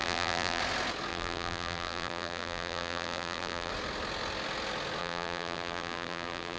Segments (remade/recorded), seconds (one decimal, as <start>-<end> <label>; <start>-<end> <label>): 0.0-0.6 remade; 0.6-1.1 recorded; 1.1-3.7 remade; 3.7-5.0 recorded; 5.0-6.6 remade